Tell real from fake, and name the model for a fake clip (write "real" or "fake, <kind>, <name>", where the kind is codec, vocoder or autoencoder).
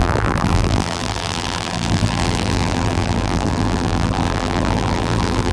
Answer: fake, vocoder, BigVGAN v2